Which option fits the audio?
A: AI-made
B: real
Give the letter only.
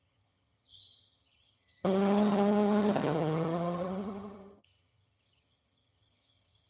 A